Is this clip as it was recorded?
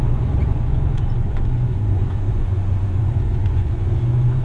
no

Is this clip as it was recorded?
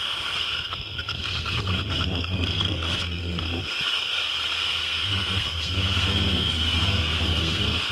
no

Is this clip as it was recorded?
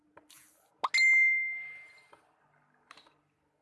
yes